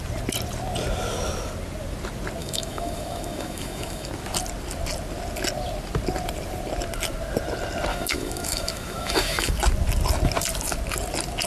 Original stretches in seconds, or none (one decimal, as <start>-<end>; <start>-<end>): 0.0-2.4; 4.1-7.9; 9.5-11.5